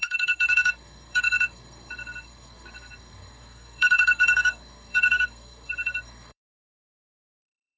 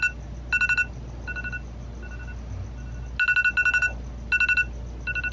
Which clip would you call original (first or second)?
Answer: second